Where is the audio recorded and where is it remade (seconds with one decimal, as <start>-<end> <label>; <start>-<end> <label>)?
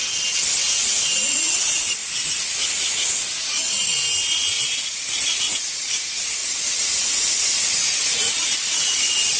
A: 0.0-0.7 recorded; 0.7-9.4 remade